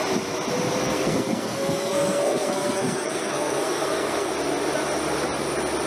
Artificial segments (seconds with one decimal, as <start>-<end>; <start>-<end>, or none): 0.8-4.3